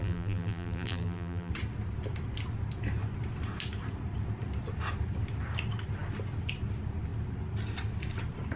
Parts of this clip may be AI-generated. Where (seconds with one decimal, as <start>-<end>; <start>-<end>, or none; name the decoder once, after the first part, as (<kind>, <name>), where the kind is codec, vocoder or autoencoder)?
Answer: 0.0-1.5 (vocoder, BigVGAN v2)